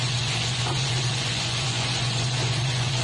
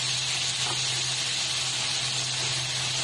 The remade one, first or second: first